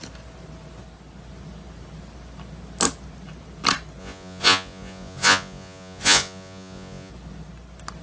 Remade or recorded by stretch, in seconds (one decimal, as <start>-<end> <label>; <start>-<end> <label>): 0.0-4.0 recorded; 4.0-7.1 remade; 7.1-8.0 recorded